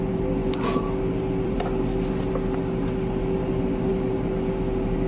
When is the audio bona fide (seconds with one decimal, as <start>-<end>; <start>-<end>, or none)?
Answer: 0.0-0.4; 3.5-3.9; 4.6-5.1